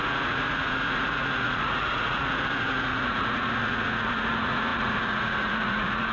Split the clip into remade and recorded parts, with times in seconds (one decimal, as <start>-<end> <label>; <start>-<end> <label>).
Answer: 0.0-6.1 remade